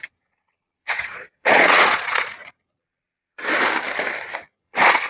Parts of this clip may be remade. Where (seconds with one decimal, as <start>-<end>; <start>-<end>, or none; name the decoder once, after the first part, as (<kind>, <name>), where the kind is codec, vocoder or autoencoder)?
0.0-3.5 (vocoder, Vocos); 4.6-5.1